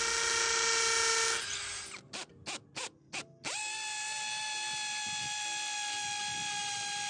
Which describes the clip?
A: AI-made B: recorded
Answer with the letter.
B